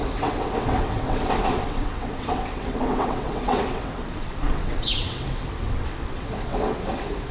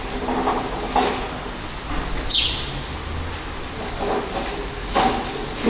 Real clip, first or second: second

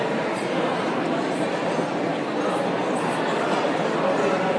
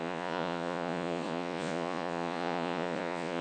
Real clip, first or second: first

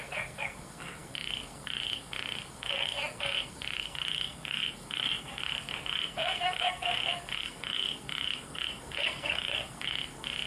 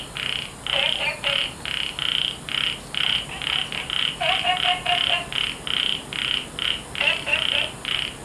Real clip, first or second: second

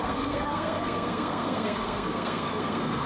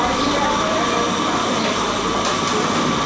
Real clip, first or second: second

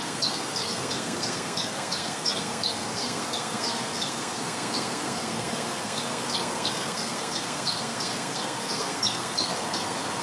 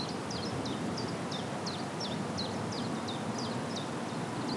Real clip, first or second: second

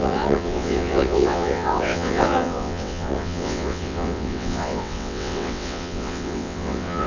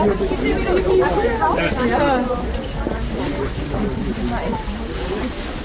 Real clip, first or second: second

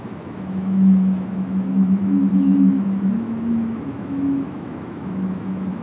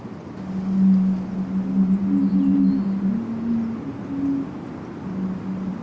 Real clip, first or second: second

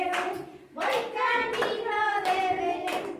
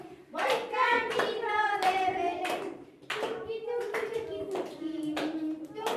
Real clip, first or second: first